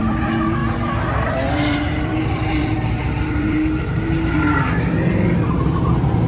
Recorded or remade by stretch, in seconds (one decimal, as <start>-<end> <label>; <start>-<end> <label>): 0.0-0.6 remade; 0.6-1.5 recorded; 1.5-6.3 remade